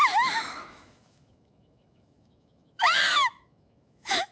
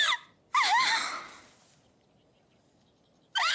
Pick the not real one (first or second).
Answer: first